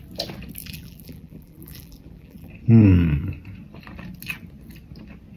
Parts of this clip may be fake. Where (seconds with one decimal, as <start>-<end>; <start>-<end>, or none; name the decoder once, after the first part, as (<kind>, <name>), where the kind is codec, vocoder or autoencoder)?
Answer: 0.6-2.5 (vocoder, BigVGAN v2)